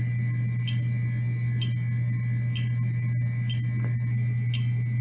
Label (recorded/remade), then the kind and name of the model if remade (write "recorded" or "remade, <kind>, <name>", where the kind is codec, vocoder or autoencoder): recorded